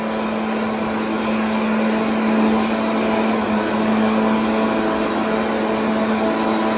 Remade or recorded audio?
recorded